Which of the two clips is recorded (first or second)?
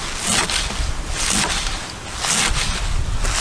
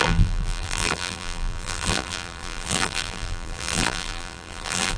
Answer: first